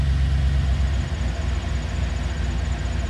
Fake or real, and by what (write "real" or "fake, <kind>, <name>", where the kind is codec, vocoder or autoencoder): real